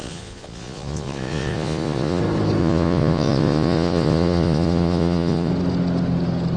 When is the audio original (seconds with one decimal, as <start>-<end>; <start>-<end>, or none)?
2.2-2.6; 5.5-6.6